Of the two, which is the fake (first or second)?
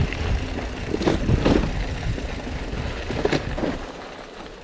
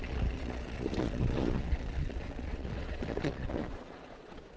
second